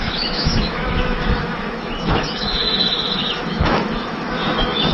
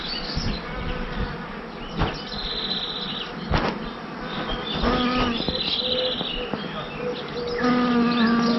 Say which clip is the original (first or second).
second